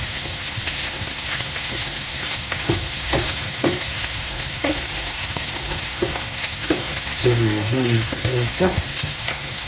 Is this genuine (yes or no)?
no